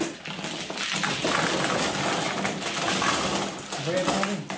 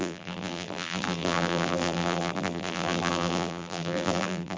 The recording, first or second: first